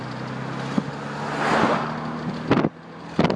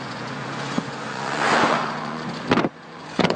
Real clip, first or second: first